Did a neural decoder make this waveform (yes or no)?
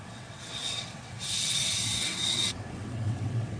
yes